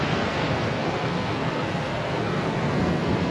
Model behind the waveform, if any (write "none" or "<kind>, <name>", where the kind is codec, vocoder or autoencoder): codec, SNAC